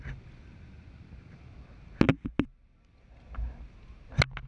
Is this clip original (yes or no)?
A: yes